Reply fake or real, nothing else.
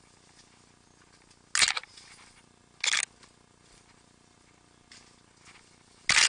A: real